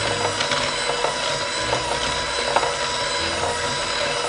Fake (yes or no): no